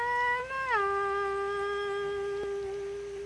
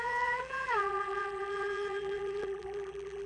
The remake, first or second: second